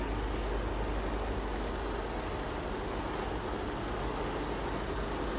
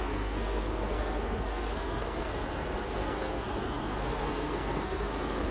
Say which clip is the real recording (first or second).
first